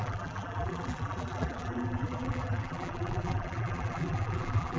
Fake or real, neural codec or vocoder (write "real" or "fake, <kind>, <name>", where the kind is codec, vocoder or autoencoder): fake, vocoder, BigVGAN v2